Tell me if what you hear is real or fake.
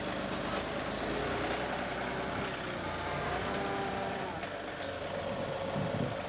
real